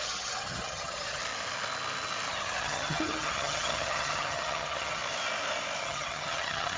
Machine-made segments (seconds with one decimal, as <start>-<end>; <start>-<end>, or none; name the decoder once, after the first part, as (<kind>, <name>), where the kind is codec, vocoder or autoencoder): 0.0-1.2 (vocoder, HiFi-GAN); 2.3-5.0; 5.8-6.8